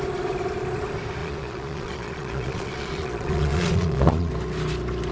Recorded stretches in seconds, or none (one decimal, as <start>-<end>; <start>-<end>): 0.0-1.2; 4.3-5.1